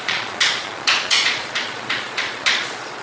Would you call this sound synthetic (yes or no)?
yes